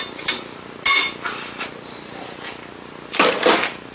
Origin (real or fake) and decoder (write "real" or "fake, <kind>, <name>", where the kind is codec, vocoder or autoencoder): real